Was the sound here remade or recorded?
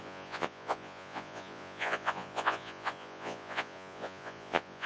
remade